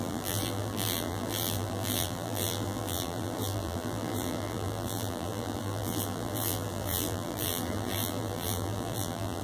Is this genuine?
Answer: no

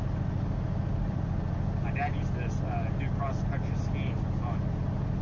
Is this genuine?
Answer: yes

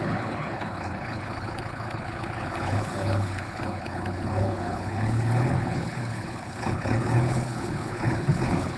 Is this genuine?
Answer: no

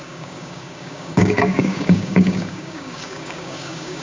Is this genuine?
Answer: no